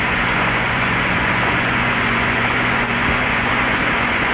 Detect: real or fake fake